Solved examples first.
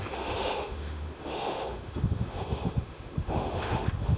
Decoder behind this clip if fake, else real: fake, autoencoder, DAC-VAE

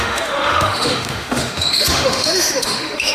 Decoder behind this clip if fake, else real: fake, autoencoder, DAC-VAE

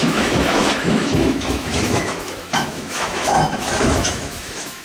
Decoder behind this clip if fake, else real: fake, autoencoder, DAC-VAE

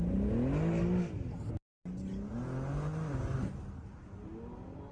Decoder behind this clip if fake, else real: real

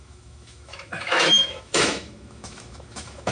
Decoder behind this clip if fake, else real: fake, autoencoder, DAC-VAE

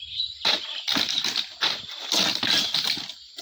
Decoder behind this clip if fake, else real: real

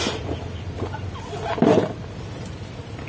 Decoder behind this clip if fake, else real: real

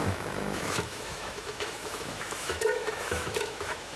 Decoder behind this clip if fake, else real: fake, autoencoder, DAC-VAE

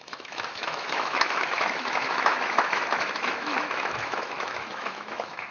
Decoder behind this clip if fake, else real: fake, autoencoder, DAC-VAE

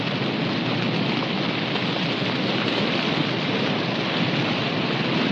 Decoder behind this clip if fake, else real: real